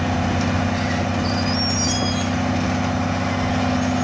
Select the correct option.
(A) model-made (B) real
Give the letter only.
B